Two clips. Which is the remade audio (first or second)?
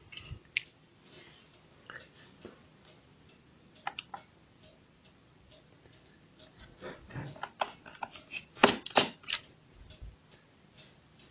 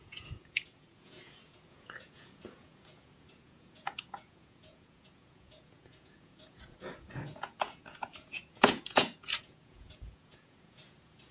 second